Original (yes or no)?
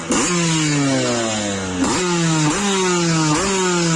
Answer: yes